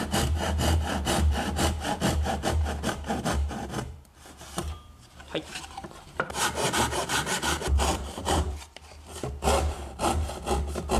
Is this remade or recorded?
remade